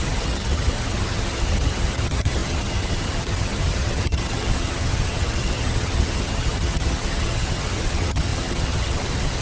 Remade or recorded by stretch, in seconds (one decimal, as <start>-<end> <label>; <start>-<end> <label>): 0.0-9.4 remade